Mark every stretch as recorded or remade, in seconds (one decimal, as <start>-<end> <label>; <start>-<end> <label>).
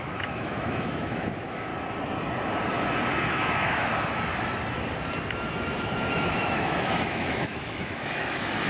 0.0-1.7 remade; 1.7-3.3 recorded; 3.3-3.9 remade; 3.9-6.1 recorded; 6.1-8.7 remade